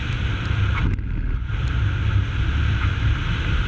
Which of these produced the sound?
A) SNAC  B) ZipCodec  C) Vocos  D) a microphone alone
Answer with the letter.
D